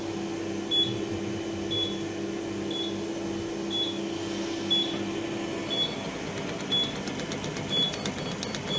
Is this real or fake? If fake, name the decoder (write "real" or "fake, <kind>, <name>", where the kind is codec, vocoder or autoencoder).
real